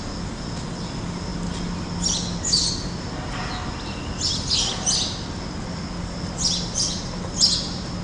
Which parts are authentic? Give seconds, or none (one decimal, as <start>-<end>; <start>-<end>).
0.0-8.0